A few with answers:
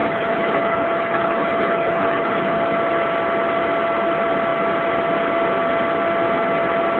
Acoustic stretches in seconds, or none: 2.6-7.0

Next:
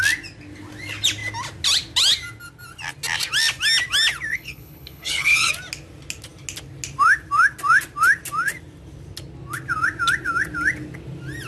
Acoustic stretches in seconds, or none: 0.0-4.3; 5.5-11.5

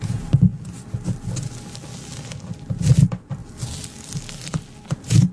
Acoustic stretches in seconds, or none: 0.0-5.3